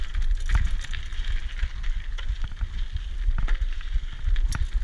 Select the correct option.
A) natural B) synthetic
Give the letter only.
A